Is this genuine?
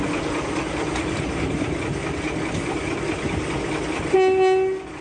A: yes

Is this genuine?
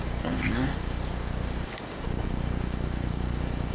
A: no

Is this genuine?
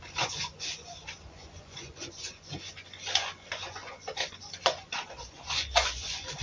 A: no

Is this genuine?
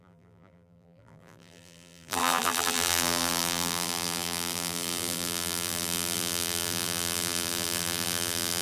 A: no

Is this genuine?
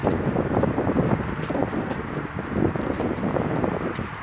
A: yes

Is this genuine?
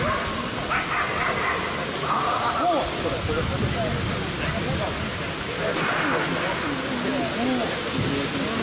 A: yes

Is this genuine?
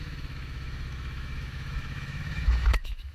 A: no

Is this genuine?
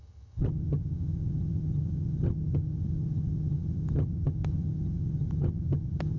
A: no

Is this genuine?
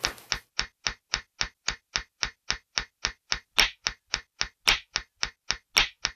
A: yes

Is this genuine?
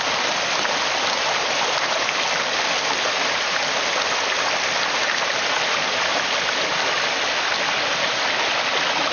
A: yes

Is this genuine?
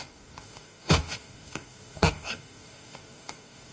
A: no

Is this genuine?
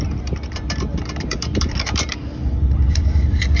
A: no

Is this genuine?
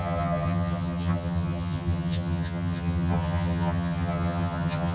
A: no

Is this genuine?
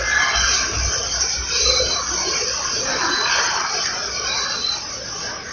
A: yes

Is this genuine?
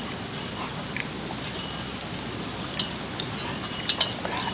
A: yes